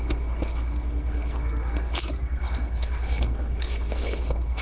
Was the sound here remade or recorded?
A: remade